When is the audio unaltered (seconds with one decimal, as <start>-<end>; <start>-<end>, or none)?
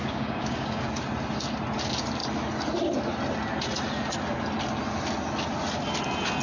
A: 0.9-6.4